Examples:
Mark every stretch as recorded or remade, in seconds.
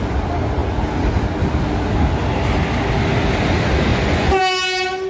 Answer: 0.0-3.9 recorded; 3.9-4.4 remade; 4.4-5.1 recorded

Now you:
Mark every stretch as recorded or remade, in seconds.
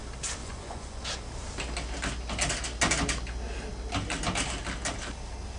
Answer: 0.0-0.4 recorded; 0.4-1.0 remade; 1.0-5.6 recorded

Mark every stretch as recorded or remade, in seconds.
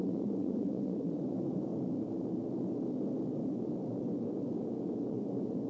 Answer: 0.0-1.7 remade; 1.7-5.1 recorded; 5.1-5.7 remade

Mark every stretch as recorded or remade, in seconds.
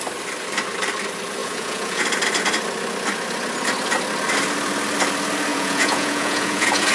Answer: 0.0-1.4 recorded; 1.4-2.0 remade; 2.0-5.5 recorded; 5.5-6.9 remade